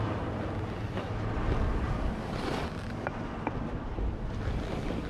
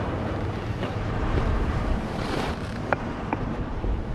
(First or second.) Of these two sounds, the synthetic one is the second